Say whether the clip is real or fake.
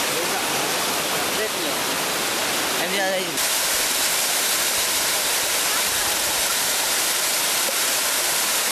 real